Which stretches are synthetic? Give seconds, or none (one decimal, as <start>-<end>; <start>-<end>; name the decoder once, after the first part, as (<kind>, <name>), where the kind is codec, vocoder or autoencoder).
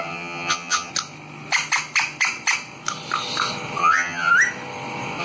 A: 0.0-0.9 (vocoder, HiFi-GAN); 3.8-4.3